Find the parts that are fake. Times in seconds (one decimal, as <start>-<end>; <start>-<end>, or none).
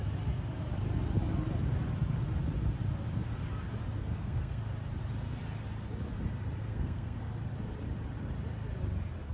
4.0-4.6; 6.6-7.2